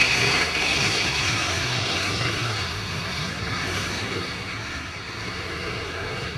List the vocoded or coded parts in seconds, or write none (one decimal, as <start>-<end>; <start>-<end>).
0.0-6.4

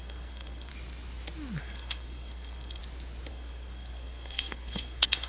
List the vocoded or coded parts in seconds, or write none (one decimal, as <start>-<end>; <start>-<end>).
0.0-0.7; 1.6-2.8; 3.3-5.3